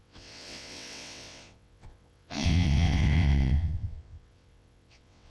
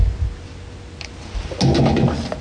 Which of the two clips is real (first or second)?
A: second